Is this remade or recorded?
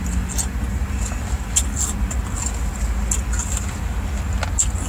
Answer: recorded